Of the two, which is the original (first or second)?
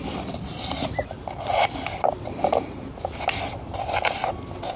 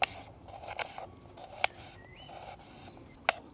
second